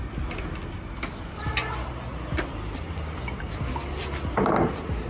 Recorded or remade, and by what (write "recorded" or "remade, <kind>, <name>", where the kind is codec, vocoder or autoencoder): recorded